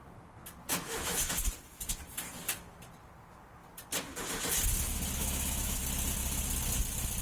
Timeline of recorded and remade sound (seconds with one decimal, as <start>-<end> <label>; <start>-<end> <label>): 0.0-0.6 recorded; 0.6-1.2 remade; 1.2-5.2 recorded; 5.2-5.8 remade; 5.8-7.2 recorded